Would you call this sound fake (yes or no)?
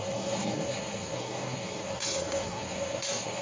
yes